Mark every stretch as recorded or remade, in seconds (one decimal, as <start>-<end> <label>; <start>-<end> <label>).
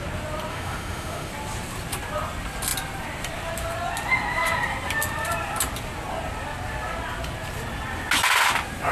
0.0-0.5 recorded; 0.5-1.3 remade; 1.3-8.9 recorded